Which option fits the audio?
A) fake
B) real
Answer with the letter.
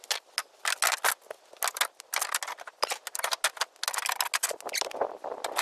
B